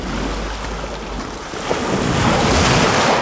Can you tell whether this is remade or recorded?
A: recorded